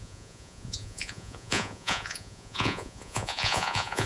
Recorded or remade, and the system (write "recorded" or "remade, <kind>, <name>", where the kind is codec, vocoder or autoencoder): remade, vocoder, Vocos